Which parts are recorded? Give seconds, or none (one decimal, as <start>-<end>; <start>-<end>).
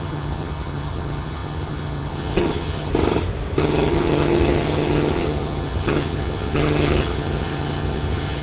2.9-3.6